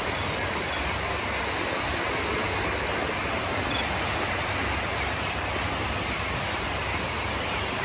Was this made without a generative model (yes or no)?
yes